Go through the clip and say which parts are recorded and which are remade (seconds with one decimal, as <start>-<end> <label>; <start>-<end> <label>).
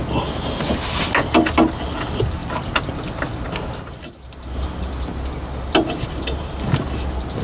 0.0-7.4 recorded